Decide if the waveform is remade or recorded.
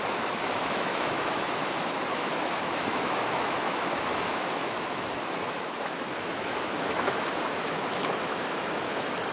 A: remade